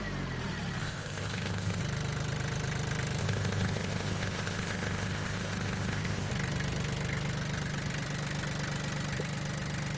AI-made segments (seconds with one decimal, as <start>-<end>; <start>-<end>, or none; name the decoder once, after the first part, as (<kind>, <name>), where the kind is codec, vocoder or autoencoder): 0.8-1.8 (codec, ZipCodec); 3.2-6.3